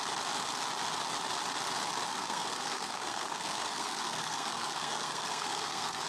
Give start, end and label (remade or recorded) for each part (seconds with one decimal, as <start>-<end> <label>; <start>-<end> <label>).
0.0-2.1 recorded; 2.1-6.1 remade